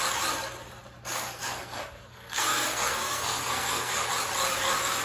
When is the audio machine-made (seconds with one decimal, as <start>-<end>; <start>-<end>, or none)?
1.1-4.1